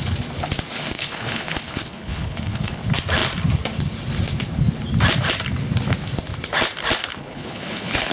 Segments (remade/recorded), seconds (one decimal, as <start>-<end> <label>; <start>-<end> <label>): 0.0-0.8 recorded; 0.8-2.8 remade; 2.8-7.0 recorded; 7.0-8.1 remade